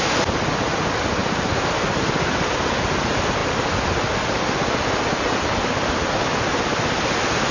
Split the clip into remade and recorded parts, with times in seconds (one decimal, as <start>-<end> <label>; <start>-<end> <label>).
0.0-7.5 recorded